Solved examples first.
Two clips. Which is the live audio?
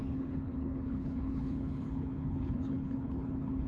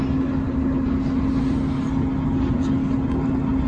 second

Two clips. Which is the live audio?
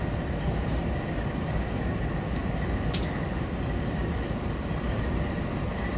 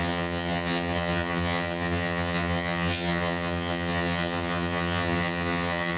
first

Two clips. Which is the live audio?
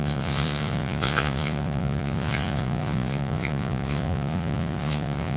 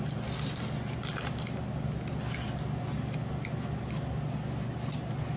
second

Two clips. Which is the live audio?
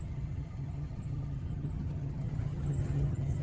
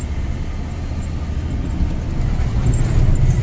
second